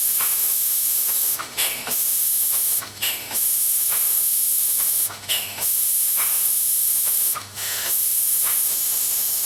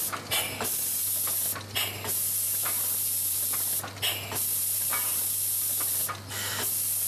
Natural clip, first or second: second